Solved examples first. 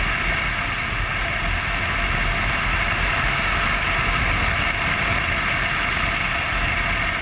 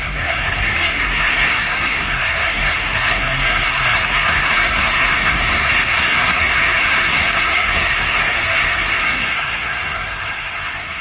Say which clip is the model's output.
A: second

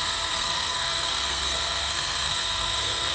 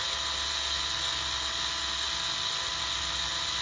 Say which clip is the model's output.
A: first